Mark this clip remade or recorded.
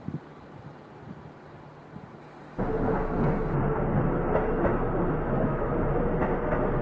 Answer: recorded